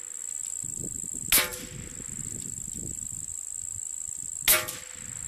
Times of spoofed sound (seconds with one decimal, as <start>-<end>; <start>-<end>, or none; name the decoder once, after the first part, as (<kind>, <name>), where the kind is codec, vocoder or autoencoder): none